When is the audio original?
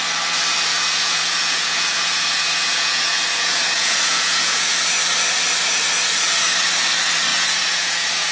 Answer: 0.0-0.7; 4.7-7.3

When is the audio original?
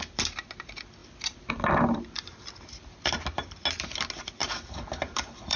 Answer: 0.0-4.4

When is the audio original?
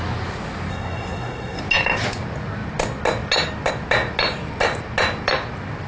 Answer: 0.0-0.7; 1.6-5.9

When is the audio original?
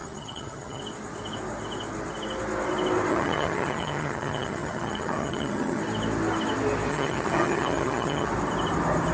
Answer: 0.8-3.1; 5.8-6.9; 8.3-9.1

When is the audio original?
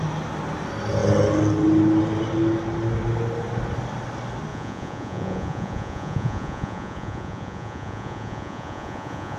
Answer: 0.0-4.5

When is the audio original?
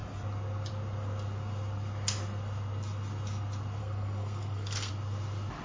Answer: 0.0-3.8; 4.9-5.6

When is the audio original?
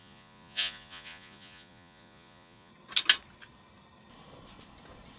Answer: 2.7-5.2